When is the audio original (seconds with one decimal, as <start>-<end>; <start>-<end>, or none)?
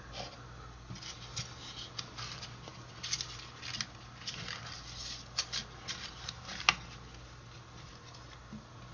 0.0-8.9